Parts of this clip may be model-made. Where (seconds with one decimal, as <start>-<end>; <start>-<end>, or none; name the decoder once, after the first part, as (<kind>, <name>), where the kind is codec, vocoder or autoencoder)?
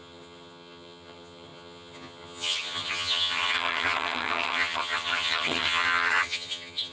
0.0-6.9 (vocoder, HiFi-GAN)